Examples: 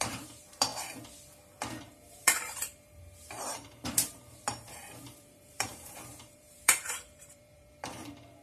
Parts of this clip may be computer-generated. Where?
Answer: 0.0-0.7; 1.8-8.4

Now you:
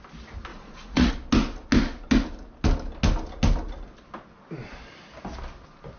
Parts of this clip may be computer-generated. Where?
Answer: 0.5-1.1

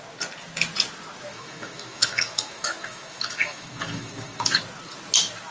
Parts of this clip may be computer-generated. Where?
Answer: 1.3-4.6

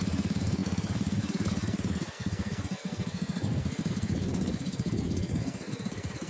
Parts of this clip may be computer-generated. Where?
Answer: 0.0-6.3

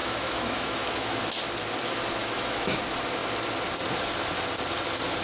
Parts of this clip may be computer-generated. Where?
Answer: 0.0-1.2; 2.2-2.8

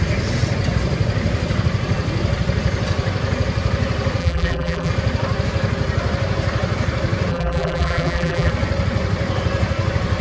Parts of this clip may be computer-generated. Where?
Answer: 4.2-4.9; 7.3-8.5

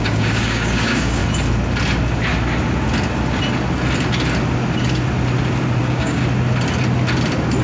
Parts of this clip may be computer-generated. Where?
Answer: 0.0-1.2; 5.8-6.2